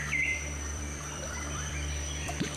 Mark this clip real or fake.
fake